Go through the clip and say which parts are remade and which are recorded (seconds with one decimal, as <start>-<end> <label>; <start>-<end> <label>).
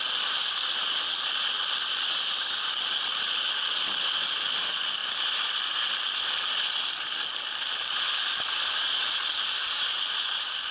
0.0-10.7 recorded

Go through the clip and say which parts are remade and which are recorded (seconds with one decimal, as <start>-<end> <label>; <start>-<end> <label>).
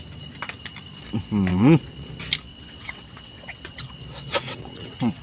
0.0-1.5 recorded; 1.5-2.1 remade; 2.1-2.5 recorded; 2.5-3.9 remade; 3.9-4.3 recorded; 4.3-5.2 remade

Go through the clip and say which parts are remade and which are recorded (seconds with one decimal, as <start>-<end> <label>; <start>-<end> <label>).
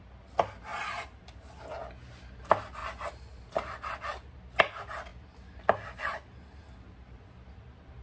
0.0-8.0 recorded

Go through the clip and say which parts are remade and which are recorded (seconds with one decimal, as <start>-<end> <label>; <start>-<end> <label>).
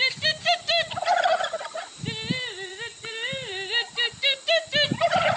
0.0-5.4 recorded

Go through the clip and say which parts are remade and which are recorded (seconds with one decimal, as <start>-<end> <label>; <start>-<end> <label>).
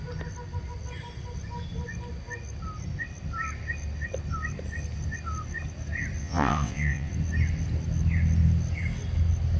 0.0-6.2 recorded; 6.2-7.1 remade; 7.1-9.6 recorded